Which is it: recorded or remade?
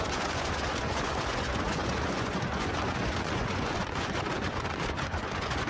remade